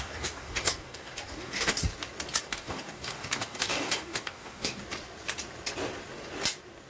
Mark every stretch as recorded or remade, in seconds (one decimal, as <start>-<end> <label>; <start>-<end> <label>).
0.0-1.8 remade; 1.8-2.4 recorded; 2.4-4.8 remade; 4.8-6.9 recorded